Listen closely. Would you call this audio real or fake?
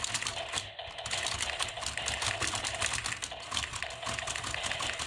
real